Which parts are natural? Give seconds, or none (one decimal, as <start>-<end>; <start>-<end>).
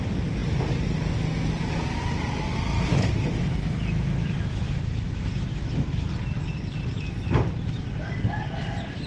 0.0-2.9; 6.1-9.1